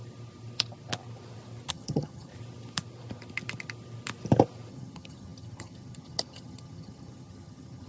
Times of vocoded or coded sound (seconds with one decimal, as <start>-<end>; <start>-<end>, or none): 1.7-2.3; 4.7-7.9